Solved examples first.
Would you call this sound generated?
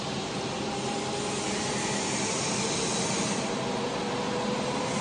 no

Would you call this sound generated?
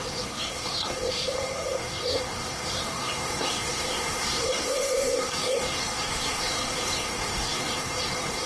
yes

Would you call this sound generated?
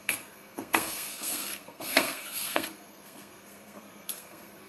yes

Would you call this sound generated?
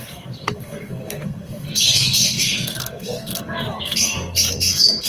yes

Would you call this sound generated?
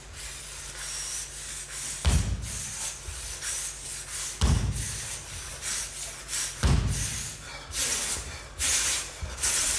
no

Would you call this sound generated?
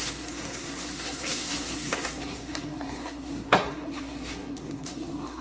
yes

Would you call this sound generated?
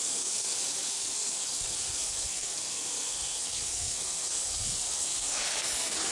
yes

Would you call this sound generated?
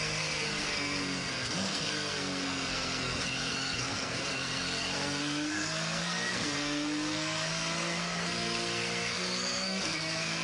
yes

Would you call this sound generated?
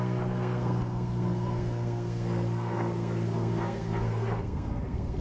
yes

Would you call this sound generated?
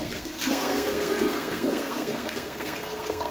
yes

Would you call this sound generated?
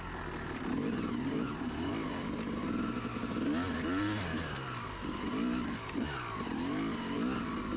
no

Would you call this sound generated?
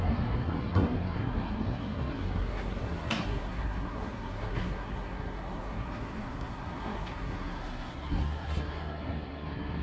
yes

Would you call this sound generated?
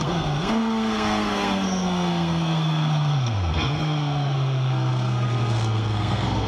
yes